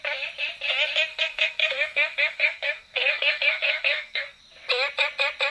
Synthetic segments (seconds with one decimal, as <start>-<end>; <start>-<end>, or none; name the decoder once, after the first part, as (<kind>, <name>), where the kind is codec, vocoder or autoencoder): 1.1-4.4 (codec, SNAC)